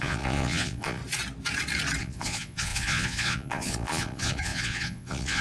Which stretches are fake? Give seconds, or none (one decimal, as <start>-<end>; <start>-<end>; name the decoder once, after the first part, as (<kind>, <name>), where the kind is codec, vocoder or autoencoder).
0.0-1.0 (vocoder, Vocos); 2.0-5.4